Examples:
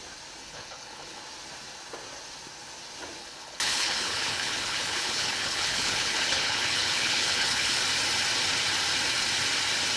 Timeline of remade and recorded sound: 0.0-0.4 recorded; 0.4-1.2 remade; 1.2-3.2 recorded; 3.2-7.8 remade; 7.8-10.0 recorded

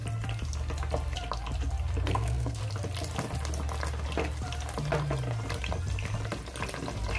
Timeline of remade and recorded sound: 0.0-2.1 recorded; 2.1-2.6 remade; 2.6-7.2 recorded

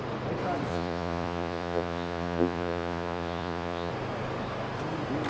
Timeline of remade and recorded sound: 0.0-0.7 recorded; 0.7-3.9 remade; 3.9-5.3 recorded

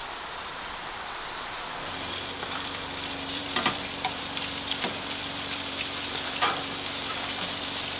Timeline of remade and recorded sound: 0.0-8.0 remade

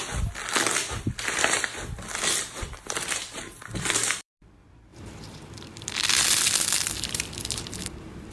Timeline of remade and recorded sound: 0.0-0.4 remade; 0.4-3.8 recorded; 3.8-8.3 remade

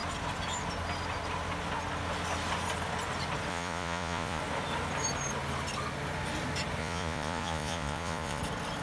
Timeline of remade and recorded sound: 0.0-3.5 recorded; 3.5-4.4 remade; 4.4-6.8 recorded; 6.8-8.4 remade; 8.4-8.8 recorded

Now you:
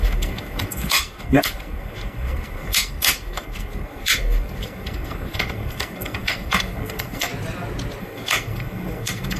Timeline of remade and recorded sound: 0.0-7.3 remade; 7.3-8.0 recorded; 8.0-9.4 remade